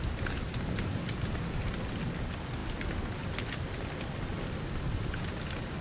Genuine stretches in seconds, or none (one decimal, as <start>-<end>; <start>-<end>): 0.0-4.3; 5.0-5.8